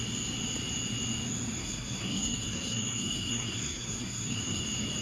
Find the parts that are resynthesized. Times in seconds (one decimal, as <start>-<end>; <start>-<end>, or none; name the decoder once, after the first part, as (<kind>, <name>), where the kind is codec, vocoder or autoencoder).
1.6-4.6 (codec, SNAC)